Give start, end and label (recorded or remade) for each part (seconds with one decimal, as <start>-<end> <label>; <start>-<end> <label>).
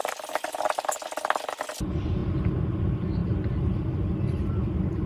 0.0-5.1 recorded